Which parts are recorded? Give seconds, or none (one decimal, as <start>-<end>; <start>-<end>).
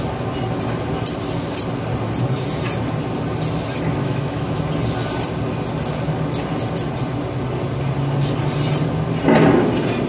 0.0-4.0; 4.6-10.1